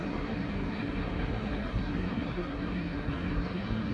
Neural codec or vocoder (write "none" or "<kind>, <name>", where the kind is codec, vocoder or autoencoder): codec, SNAC